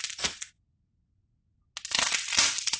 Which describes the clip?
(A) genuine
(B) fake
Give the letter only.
A